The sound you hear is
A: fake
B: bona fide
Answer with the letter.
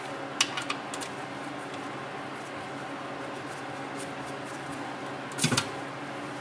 B